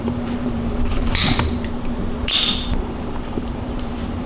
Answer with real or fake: fake